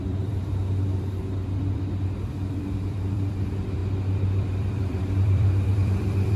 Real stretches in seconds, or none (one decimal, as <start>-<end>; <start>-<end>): none